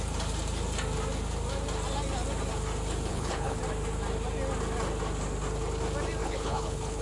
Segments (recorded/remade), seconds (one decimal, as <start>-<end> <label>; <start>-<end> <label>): 0.0-3.1 recorded; 3.1-3.6 remade; 3.6-6.2 recorded; 6.2-7.0 remade